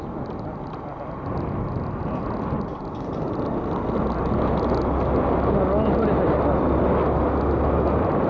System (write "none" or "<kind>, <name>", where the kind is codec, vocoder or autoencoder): none